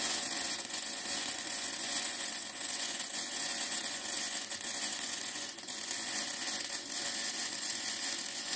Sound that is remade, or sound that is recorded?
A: remade